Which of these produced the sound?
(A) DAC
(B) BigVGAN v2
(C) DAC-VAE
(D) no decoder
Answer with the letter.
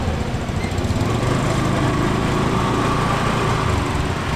D